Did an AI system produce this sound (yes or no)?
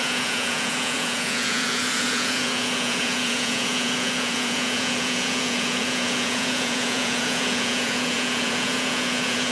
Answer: yes